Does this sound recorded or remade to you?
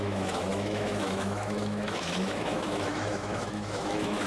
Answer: remade